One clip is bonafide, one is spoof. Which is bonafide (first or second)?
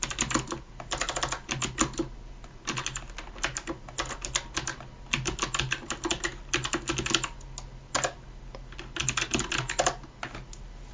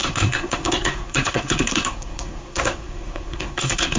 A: first